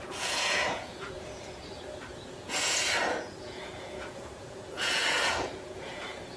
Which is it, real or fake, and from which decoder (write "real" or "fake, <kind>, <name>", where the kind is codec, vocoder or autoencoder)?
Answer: fake, vocoder, Vocos